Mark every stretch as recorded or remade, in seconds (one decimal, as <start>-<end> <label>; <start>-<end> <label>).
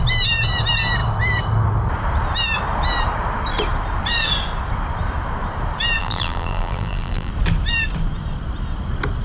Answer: 0.0-6.0 recorded; 6.0-7.3 remade; 7.3-9.2 recorded